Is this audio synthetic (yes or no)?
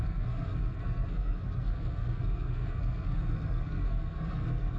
yes